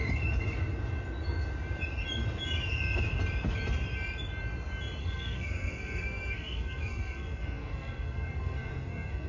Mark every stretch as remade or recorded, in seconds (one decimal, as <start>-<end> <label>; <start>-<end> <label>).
0.0-5.0 recorded; 5.0-9.3 remade